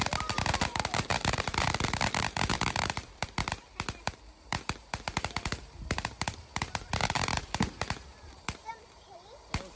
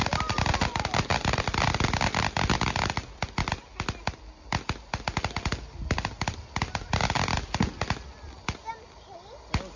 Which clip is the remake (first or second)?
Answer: first